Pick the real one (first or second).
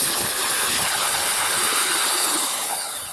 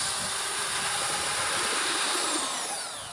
second